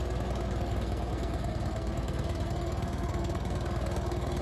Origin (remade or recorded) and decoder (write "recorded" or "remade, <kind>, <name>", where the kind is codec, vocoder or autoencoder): remade, codec, SNAC